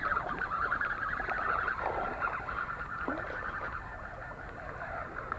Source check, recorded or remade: recorded